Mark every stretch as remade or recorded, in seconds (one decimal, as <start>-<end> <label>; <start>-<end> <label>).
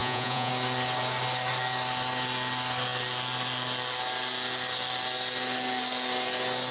0.0-0.5 remade; 0.5-6.7 recorded